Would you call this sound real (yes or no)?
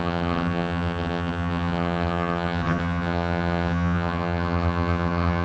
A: no